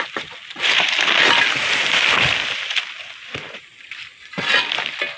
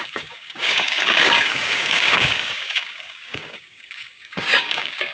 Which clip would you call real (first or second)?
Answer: first